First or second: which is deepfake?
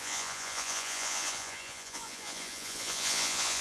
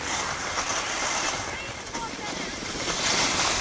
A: first